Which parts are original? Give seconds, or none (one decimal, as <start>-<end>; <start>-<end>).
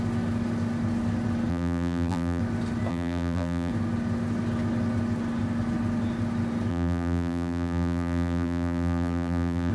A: 0.0-1.5; 2.4-2.9; 3.7-6.7